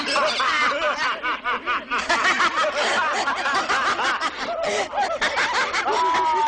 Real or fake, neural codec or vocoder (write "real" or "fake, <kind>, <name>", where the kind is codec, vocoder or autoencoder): real